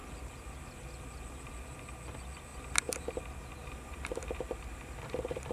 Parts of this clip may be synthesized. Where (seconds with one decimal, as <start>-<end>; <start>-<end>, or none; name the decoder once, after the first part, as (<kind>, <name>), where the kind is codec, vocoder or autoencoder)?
2.5-3.2 (vocoder, BigVGAN v2); 3.6-5.5